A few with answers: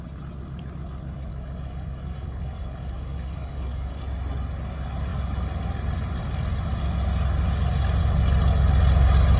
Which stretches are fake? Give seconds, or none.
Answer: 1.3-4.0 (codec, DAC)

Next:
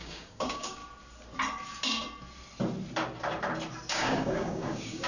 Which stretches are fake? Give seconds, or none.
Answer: 0.0-0.8 (codec, DAC); 3.9-5.1

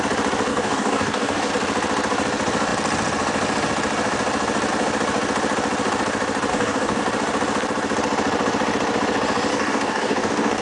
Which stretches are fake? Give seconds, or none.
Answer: 0.5-1.5 (codec, DAC); 6.5-7.0; 9.5-10.6

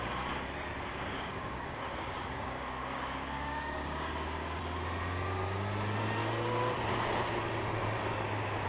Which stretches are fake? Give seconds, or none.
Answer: 0.9-4.6 (codec, DAC)

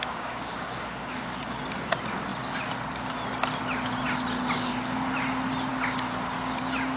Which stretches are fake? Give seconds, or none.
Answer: 0.0-1.6 (codec, DAC)

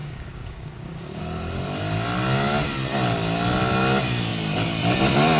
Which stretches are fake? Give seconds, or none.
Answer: 0.0-1.2 (codec, DAC)

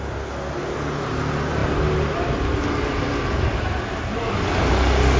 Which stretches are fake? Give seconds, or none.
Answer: none